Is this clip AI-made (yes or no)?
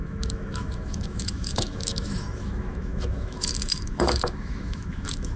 yes